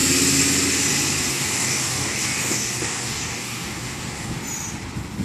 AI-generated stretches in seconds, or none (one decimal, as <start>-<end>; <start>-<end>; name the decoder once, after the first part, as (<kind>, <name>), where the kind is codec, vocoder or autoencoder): 1.3-4.4 (codec, DAC)